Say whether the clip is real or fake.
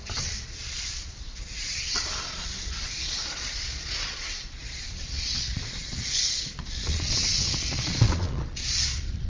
fake